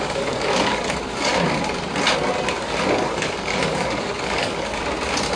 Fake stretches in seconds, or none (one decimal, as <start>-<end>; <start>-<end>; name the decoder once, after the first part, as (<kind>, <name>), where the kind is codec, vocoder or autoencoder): 0.0-1.3 (codec, DAC); 2.5-4.7